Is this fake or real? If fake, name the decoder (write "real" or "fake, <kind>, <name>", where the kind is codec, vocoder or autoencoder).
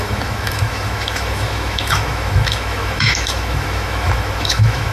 fake, autoencoder, DAC-VAE